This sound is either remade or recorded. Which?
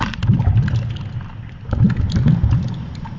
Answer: recorded